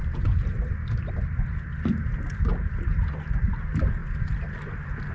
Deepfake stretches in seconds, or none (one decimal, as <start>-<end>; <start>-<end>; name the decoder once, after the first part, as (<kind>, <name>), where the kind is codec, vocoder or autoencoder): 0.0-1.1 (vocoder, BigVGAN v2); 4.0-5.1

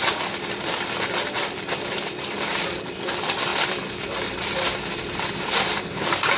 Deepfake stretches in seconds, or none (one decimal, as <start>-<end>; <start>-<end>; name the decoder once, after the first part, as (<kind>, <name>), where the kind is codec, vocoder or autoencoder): 0.0-6.4 (vocoder, BigVGAN v2)

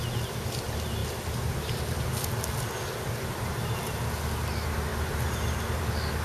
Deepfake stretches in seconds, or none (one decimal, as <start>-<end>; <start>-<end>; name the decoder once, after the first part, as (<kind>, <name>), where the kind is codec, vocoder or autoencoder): 1.0-2.3 (vocoder, BigVGAN v2)

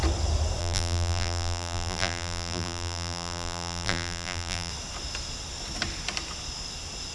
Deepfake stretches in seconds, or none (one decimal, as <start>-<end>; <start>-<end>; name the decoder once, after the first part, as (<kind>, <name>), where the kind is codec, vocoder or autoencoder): 0.6-4.7 (vocoder, BigVGAN v2)